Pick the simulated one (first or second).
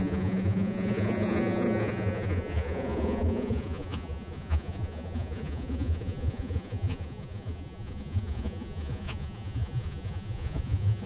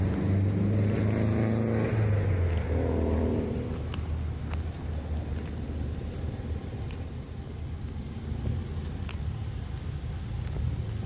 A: first